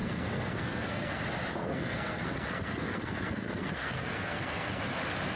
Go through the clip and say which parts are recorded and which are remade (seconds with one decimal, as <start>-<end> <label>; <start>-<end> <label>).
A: 0.0-1.2 remade; 1.2-1.6 recorded; 1.6-4.8 remade; 4.8-5.4 recorded